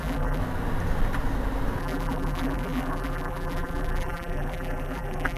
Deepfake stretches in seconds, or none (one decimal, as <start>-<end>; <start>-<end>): 0.0-0.4; 1.8-5.4